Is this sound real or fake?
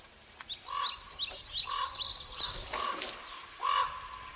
real